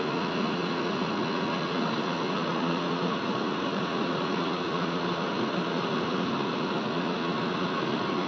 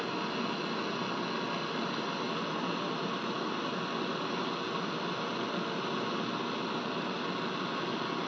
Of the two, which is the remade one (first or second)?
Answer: first